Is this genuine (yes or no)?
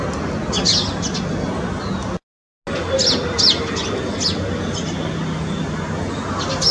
yes